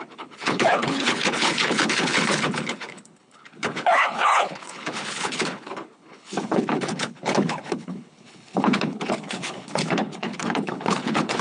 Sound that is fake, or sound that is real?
fake